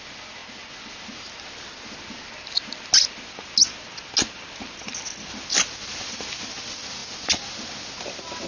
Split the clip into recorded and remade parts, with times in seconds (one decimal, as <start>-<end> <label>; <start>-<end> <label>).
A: 0.0-8.5 recorded